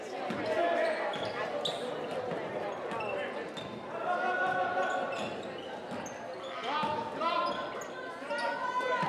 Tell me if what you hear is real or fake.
real